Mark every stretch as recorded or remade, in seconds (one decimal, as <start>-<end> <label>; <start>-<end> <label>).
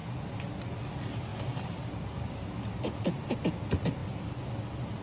0.0-1.3 recorded; 1.3-3.5 remade; 3.5-5.0 recorded